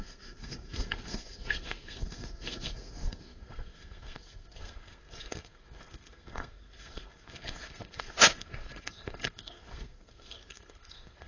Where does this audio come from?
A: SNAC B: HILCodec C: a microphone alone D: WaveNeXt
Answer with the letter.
A